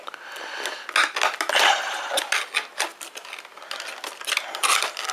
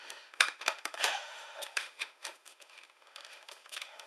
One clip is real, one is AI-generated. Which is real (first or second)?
first